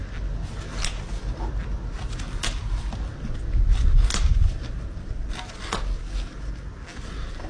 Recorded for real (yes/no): yes